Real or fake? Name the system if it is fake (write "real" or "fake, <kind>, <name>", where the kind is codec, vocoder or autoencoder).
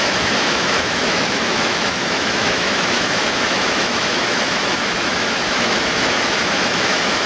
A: fake, autoencoder, DAC-VAE